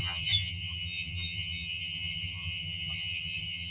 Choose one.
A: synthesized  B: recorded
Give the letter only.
A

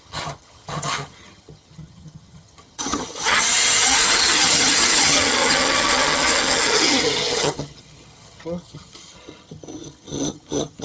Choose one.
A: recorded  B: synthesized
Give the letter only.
B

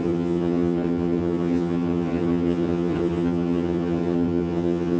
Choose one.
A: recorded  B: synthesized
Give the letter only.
B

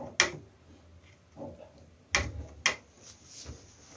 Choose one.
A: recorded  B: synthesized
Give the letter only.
A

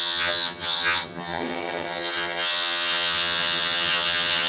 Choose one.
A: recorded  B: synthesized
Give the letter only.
B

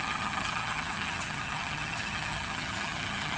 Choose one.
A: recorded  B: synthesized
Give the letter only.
B